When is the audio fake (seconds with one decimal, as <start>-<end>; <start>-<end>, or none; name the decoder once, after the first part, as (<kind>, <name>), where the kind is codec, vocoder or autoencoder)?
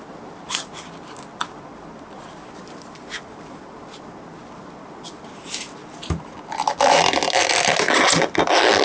none